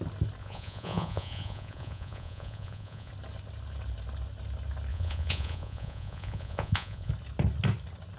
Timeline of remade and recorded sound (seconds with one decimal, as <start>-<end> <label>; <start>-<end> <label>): 0.0-0.4 recorded; 0.4-3.1 remade; 3.1-4.9 recorded; 4.9-7.1 remade; 7.1-8.2 recorded

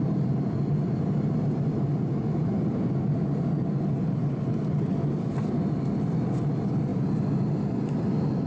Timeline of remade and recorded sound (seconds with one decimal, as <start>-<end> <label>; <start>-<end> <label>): 0.0-8.5 recorded

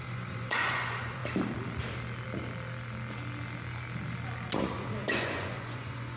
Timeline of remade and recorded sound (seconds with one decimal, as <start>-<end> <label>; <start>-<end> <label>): 0.0-1.2 remade; 1.2-4.8 recorded; 4.8-6.2 remade

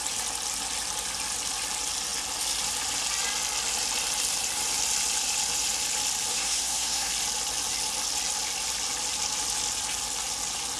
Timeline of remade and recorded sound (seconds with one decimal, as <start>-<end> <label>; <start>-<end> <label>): 0.0-6.3 recorded; 6.3-7.1 remade; 7.1-10.8 recorded

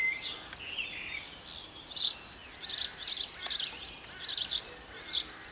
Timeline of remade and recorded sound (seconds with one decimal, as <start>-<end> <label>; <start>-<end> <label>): 0.0-5.5 recorded

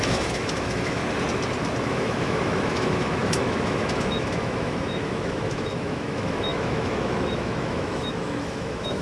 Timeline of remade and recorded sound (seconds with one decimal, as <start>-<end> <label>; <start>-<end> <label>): 0.0-1.0 remade; 1.0-1.8 recorded; 1.8-9.0 remade

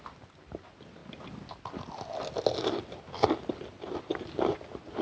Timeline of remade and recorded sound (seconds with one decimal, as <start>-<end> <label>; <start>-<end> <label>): 0.0-5.0 recorded